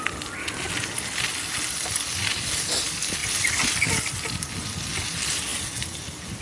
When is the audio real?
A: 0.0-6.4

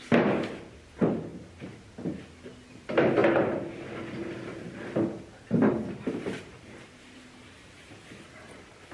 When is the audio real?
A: 0.0-1.3; 2.2-4.2

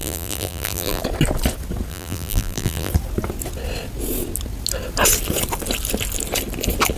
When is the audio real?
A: 1.0-1.9; 2.9-7.0

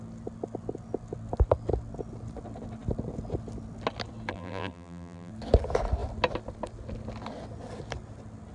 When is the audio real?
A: 0.0-4.3; 5.3-8.5

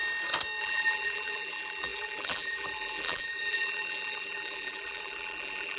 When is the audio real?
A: 0.0-0.6

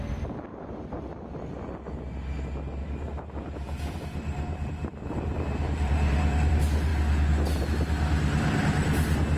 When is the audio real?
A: 0.0-0.5; 1.0-2.8; 6.5-9.4

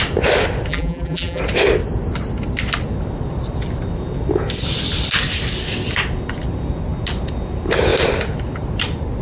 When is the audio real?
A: 0.0-0.7; 1.4-9.2

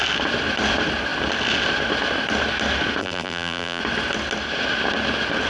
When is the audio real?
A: 0.0-3.0; 3.8-5.5